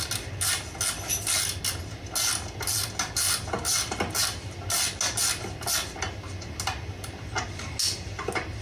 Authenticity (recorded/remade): recorded